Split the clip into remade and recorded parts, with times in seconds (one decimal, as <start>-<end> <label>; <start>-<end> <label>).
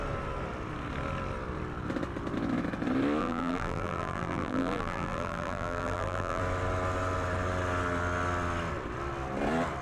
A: 0.0-3.2 recorded; 3.2-6.4 remade; 6.4-9.8 recorded